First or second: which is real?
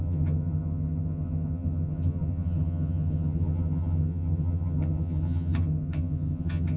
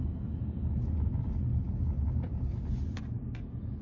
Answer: second